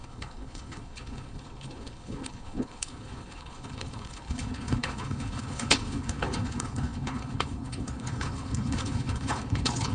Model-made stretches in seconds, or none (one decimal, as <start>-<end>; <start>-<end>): 0.0-9.9